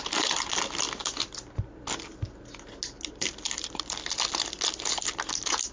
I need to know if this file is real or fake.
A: real